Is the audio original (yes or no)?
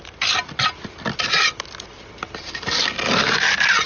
yes